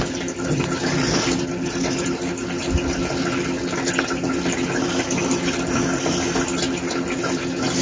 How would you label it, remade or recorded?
recorded